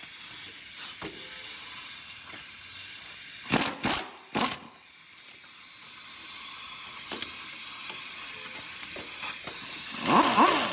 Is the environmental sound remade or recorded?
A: recorded